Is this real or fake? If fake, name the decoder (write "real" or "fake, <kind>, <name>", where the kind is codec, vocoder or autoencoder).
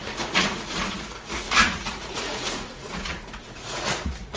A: fake, vocoder, Vocos